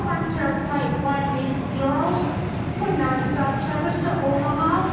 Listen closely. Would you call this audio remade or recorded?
recorded